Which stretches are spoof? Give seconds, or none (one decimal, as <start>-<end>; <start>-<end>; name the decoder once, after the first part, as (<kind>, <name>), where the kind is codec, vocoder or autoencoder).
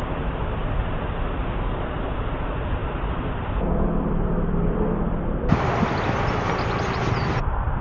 2.8-7.0 (vocoder, BigVGAN v2)